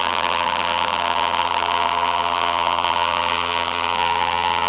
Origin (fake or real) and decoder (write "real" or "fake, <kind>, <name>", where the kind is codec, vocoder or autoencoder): fake, vocoder, BigVGAN v2